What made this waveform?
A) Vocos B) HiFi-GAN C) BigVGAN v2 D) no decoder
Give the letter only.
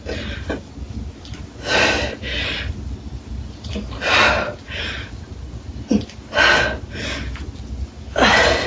D